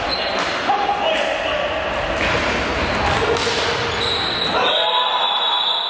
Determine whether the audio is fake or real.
real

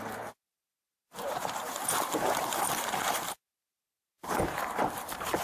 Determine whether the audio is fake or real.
fake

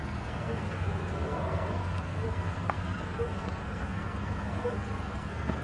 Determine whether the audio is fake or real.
fake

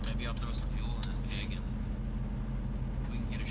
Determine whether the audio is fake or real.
real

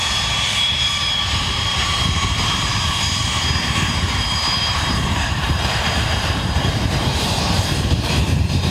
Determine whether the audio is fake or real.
fake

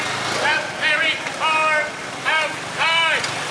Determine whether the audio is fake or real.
real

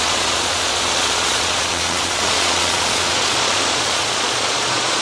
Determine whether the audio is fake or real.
fake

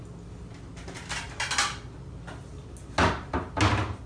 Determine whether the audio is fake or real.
real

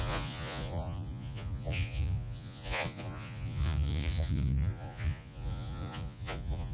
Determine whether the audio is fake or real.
fake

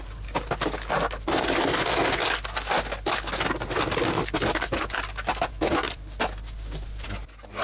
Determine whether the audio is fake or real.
real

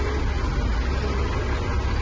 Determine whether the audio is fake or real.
real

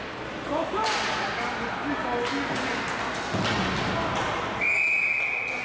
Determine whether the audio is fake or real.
real